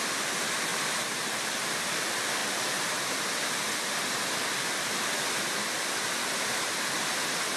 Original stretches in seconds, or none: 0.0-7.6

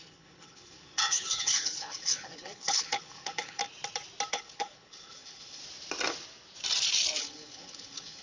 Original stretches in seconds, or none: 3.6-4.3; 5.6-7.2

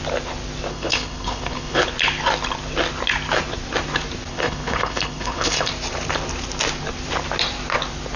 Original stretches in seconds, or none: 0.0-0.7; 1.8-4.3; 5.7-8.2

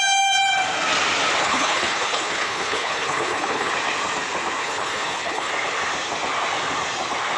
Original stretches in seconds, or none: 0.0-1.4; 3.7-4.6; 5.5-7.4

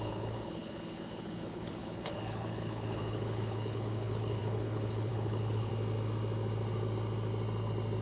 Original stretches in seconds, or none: 5.7-8.0